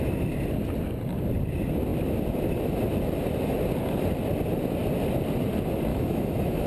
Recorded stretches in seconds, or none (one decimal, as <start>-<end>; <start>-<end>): 0.0-5.9